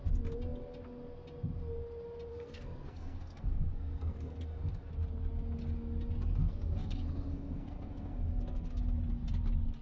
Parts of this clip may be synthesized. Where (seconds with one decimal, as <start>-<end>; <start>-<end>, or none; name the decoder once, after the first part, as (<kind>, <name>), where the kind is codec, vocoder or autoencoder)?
2.3-4.9 (codec, SNAC); 6.4-8.8